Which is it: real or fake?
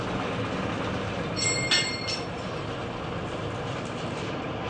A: real